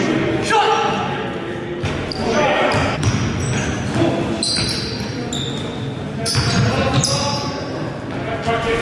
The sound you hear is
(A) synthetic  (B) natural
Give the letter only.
B